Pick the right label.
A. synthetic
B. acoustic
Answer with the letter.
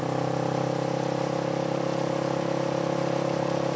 B